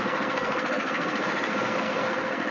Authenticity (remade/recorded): remade